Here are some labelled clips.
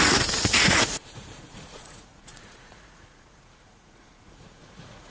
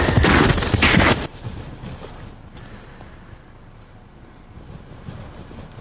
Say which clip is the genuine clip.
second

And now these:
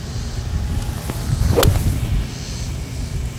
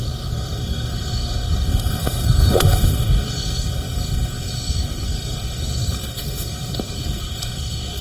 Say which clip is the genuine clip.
first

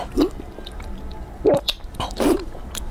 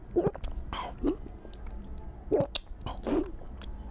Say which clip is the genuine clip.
second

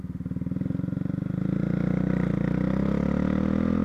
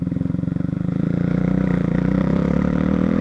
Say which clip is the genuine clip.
first